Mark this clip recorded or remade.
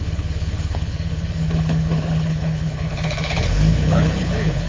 remade